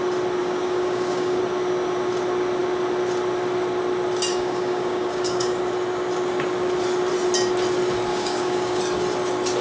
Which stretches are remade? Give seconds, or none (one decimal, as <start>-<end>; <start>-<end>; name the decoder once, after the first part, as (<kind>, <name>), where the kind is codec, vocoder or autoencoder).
0.4-1.4 (codec, DAC); 4.3-5.6; 8.1-8.8